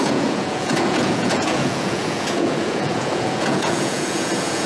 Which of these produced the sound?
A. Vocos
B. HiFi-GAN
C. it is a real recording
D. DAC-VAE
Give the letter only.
A